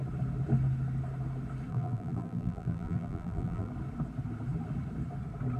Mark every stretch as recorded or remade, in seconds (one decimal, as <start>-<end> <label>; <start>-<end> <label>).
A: 0.0-1.7 recorded; 1.7-3.7 remade; 3.7-5.6 recorded